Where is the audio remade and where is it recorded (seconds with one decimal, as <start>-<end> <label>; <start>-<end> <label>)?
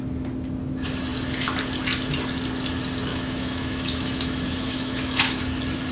0.0-3.1 recorded; 3.1-5.4 remade; 5.4-5.9 recorded